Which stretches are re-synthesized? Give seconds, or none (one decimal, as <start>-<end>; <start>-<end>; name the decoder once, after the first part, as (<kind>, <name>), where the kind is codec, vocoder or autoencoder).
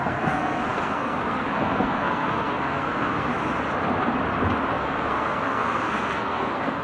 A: 0.0-3.3 (codec, SNAC); 4.7-6.8